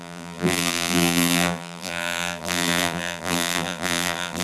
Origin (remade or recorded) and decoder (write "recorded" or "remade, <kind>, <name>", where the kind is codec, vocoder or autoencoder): remade, vocoder, BigVGAN v2